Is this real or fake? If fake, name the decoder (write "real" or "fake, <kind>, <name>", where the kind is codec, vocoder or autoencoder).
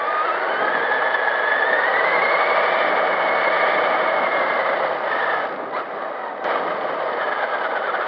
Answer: real